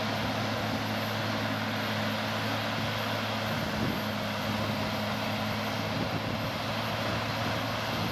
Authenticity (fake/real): real